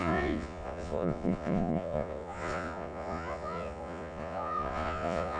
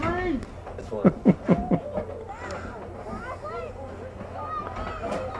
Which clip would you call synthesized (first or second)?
first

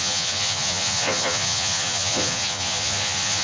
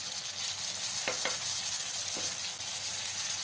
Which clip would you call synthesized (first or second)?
first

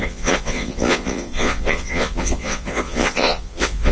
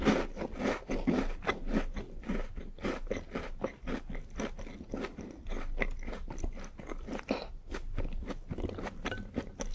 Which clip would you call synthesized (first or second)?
first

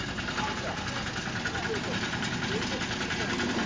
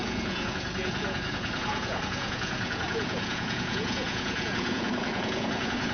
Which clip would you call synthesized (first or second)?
second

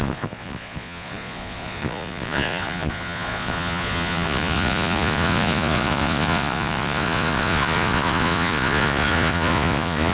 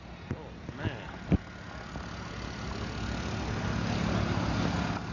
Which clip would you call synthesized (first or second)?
first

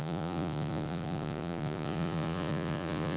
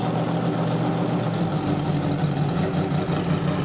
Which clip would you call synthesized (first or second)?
first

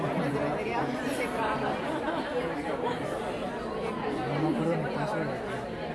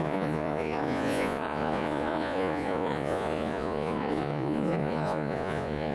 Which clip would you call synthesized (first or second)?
second